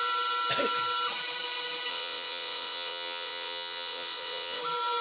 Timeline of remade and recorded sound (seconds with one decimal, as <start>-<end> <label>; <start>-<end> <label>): 0.0-1.9 recorded; 1.9-4.6 remade; 4.6-5.0 recorded